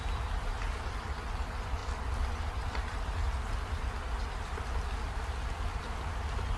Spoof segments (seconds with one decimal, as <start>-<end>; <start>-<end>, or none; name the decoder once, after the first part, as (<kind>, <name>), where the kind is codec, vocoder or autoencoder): none